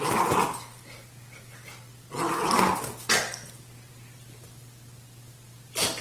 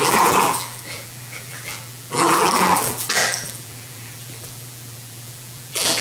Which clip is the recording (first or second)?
first